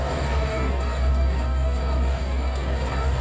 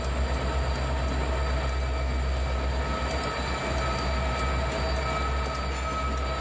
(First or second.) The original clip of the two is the second